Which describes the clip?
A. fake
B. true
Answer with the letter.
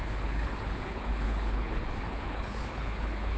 A